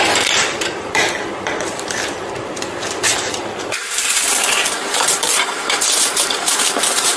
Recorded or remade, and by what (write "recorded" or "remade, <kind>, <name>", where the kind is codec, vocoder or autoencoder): remade, vocoder, BigVGAN v2